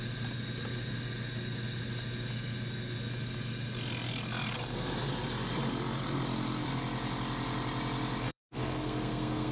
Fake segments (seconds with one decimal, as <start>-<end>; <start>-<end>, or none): 8.2-9.5